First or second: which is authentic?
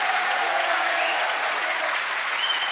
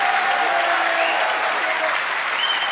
second